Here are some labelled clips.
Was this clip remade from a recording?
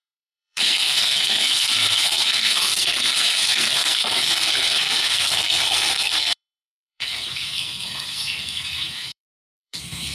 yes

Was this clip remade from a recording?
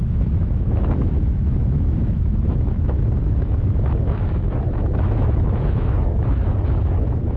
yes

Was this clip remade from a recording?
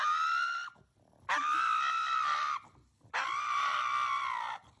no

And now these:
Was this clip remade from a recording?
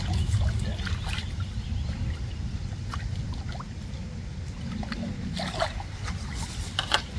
no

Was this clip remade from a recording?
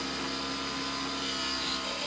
no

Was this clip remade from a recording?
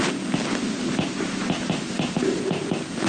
no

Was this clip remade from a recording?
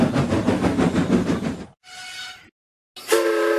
no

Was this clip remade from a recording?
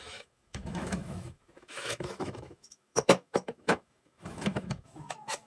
yes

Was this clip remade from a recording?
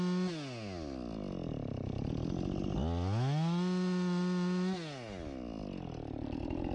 no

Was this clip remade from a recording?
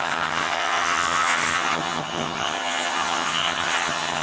yes